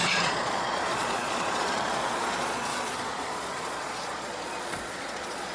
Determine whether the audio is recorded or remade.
remade